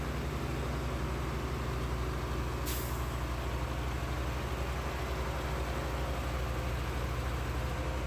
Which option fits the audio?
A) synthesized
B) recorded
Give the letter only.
B